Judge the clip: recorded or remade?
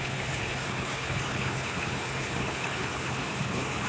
remade